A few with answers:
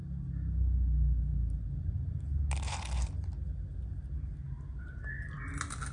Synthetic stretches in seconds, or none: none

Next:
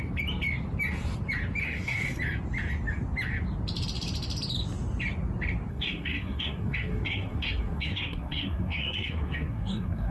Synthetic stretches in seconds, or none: 1.6-2.2 (codec, SNAC); 5.7-10.1

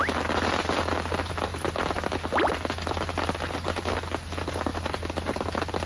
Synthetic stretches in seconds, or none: none

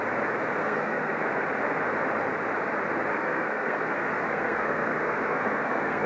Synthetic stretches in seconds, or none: 0.6-1.3 (codec, SNAC); 3.1-6.1

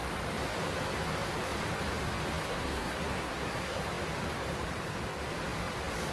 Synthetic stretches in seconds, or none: 2.5-3.8 (codec, SNAC)

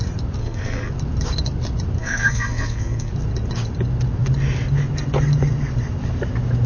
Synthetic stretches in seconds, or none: 0.4-0.9 (codec, SNAC); 2.0-3.1